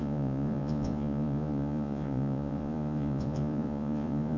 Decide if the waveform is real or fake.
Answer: fake